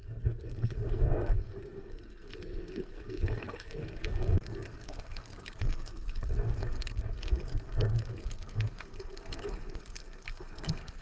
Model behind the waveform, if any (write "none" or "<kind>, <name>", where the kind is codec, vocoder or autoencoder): codec, SNAC